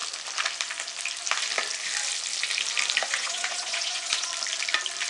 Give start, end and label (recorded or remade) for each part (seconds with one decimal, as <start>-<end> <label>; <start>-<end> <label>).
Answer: 0.0-3.0 recorded; 3.0-4.3 remade; 4.3-5.1 recorded

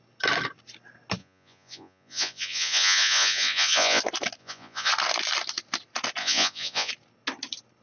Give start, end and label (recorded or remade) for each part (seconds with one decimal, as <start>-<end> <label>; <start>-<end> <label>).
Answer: 0.0-1.2 recorded; 1.2-4.0 remade; 4.0-4.4 recorded; 4.4-4.9 remade; 4.9-6.2 recorded; 6.2-6.9 remade; 6.9-7.8 recorded

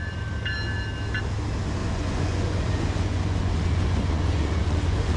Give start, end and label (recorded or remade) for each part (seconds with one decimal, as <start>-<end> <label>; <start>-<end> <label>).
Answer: 0.0-1.8 recorded; 1.8-5.2 remade

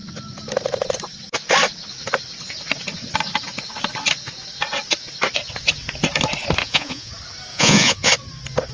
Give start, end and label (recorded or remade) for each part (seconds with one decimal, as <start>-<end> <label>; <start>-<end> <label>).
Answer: 0.0-6.6 recorded; 6.6-7.1 remade; 7.1-7.5 recorded; 7.5-8.1 remade; 8.1-8.7 recorded